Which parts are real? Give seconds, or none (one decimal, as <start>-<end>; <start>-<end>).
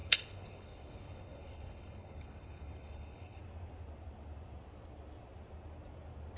3.4-6.4